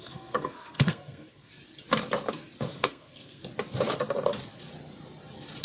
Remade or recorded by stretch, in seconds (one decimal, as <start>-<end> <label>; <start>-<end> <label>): 0.0-1.5 remade; 1.5-2.6 recorded; 2.6-3.4 remade; 3.4-5.6 recorded